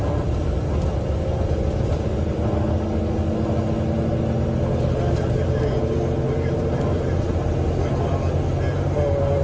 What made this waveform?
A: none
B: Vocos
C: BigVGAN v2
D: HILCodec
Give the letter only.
A